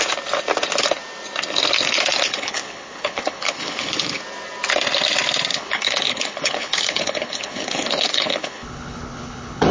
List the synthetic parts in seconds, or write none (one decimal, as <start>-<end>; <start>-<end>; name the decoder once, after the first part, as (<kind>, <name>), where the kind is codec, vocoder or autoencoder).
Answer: 2.3-4.2 (codec, HILCodec); 5.5-9.7